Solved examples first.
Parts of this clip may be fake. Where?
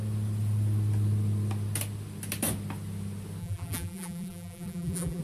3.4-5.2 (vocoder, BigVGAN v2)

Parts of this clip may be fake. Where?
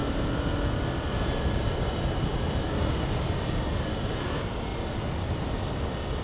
none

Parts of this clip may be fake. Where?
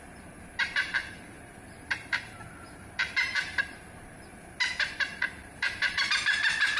0.6-4.3 (vocoder, BigVGAN v2); 5.1-6.1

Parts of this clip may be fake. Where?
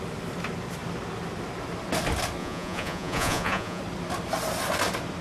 2.4-3.8 (vocoder, Vocos)